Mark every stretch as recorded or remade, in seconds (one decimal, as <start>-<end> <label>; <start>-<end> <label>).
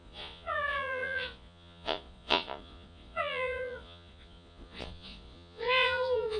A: 0.0-6.4 remade